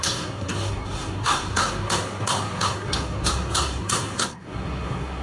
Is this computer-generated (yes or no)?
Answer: yes